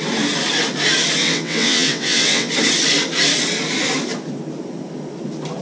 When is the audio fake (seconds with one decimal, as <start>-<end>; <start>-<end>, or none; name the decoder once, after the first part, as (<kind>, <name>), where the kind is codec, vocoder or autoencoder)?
1.2-2.5 (vocoder, WaveNeXt)